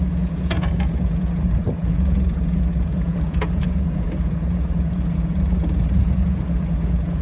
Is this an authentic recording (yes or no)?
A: no